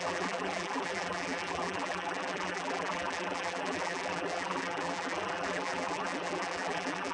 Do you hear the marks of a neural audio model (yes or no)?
yes